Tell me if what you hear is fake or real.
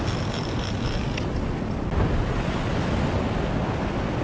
real